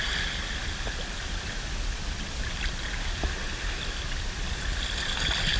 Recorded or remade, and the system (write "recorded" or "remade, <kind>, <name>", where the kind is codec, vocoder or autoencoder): recorded